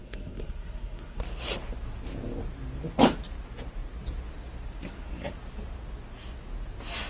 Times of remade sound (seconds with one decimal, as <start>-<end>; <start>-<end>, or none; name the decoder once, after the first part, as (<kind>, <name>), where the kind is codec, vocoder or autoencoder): 0.0-1.2 (codec, SNAC)

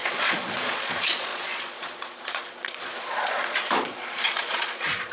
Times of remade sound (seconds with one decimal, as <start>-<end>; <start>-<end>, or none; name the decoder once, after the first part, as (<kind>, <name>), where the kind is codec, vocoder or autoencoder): 0.0-5.1 (vocoder, Vocos)

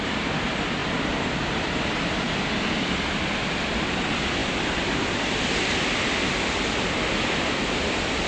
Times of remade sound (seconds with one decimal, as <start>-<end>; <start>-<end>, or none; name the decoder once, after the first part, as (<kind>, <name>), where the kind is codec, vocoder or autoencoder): none

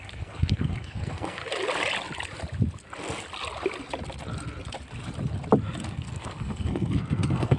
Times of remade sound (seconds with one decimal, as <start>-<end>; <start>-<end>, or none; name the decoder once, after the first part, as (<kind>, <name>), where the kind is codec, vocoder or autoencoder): 0.0-1.4 (codec, SNAC); 5.9-7.6

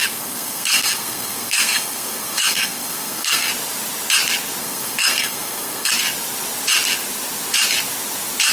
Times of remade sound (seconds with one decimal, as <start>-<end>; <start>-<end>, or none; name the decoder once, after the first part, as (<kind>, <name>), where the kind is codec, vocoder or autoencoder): 0.0-3.5 (codec, SNAC); 4.6-5.9